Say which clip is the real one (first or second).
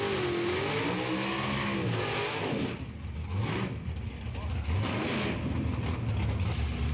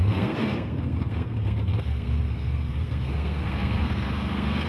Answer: first